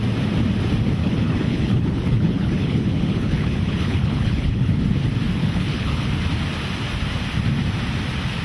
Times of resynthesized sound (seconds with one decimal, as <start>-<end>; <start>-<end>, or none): 1.0-4.8; 5.4-6.1